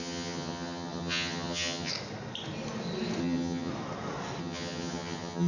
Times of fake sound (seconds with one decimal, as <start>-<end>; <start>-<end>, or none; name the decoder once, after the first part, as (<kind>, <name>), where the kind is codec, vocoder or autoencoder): 0.0-1.9 (vocoder, HiFi-GAN); 3.2-3.7; 4.4-5.5